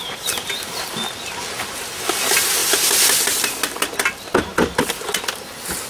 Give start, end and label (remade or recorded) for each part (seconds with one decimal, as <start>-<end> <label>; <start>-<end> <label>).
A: 0.0-2.6 recorded; 2.6-4.2 remade; 4.2-5.9 recorded